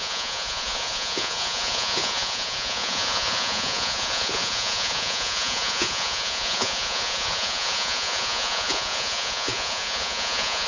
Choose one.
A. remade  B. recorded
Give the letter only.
A